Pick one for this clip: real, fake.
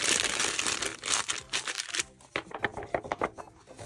real